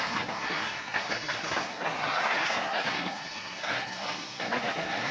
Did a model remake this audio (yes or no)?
yes